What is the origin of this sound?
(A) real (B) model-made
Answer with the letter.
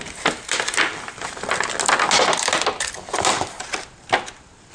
A